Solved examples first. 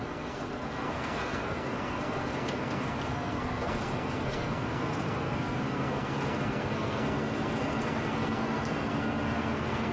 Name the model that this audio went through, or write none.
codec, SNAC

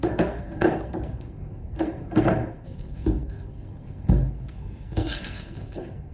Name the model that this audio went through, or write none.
codec, SNAC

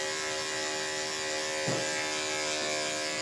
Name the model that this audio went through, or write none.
none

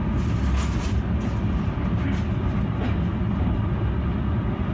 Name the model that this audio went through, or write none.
none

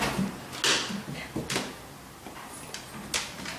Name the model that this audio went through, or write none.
none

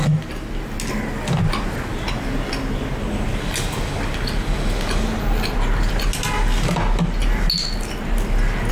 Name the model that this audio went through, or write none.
none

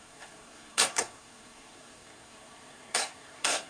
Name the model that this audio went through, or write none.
codec, SNAC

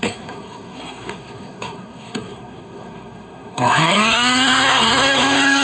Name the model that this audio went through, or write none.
codec, SNAC